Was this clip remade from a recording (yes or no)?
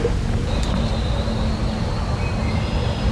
no